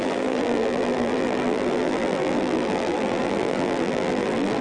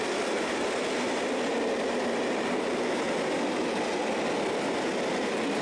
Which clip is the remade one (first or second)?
first